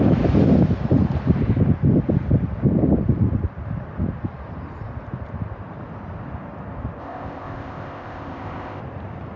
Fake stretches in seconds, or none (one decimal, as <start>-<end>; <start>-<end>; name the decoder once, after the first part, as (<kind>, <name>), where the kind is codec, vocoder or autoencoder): 7.0-8.8 (codec, ZipCodec)